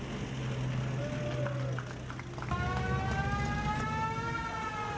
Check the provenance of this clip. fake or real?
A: real